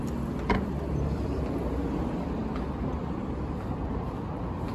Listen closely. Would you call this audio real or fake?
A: real